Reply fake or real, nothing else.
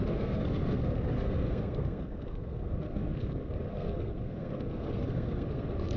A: fake